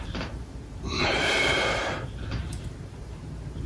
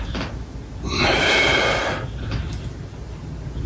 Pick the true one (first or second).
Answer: second